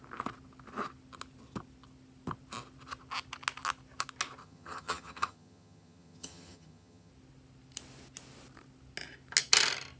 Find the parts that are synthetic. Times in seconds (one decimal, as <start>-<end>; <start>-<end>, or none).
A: 4.4-7.1